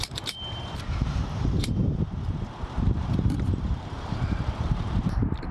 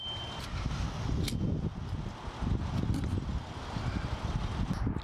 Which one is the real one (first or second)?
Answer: second